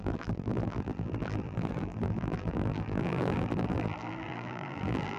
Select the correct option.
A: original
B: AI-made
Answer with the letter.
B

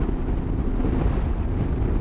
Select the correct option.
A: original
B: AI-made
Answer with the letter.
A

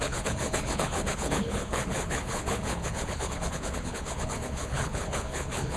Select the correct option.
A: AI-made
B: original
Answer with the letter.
A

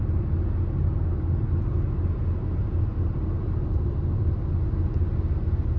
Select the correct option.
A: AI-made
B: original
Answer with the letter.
B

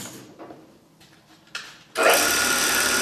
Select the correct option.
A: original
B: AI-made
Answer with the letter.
A